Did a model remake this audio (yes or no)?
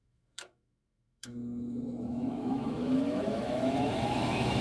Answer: yes